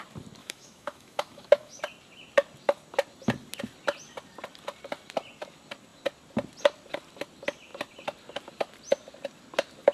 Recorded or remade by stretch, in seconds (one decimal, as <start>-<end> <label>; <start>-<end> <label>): 0.0-0.4 recorded; 0.4-1.8 remade; 1.8-9.9 recorded